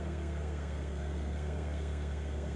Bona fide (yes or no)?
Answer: no